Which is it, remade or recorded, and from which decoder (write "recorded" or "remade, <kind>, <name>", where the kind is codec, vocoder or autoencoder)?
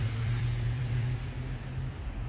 remade, vocoder, BigVGAN v2